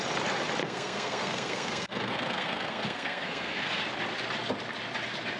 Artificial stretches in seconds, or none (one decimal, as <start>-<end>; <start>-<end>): 0.6-3.8